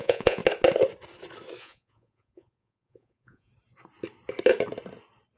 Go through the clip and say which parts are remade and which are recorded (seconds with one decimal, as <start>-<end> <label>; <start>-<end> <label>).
0.0-0.4 remade; 0.4-1.6 recorded; 1.6-3.5 remade; 3.5-5.4 recorded